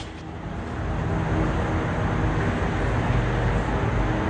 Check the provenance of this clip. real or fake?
real